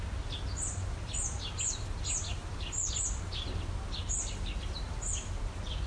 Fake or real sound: real